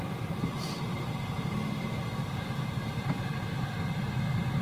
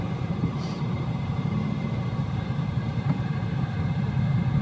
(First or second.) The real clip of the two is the first